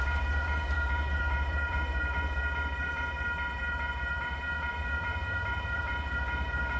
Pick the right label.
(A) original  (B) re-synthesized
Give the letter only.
B